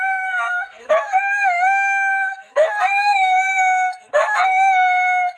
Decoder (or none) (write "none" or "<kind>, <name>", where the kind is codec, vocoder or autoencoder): codec, SNAC